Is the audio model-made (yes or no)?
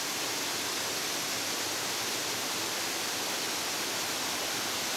no